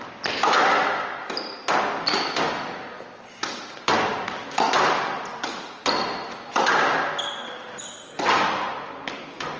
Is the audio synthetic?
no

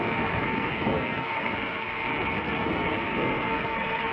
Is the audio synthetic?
yes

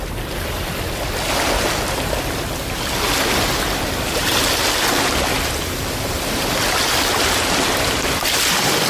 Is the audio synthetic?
no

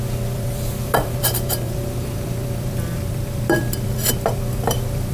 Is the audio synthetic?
yes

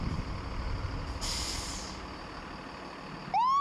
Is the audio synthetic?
no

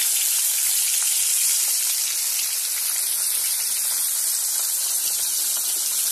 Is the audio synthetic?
no